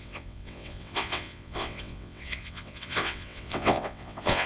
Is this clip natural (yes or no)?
no